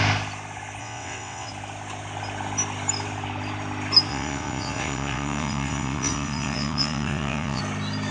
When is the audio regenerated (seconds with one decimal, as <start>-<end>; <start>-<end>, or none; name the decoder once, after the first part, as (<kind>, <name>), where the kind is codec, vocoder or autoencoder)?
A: 0.8-1.5 (vocoder, WaveNeXt); 4.1-7.6